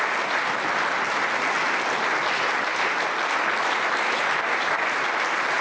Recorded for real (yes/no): yes